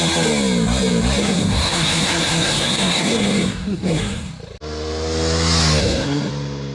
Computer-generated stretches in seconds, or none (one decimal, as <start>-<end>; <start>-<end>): 1.2-4.3; 5.8-6.3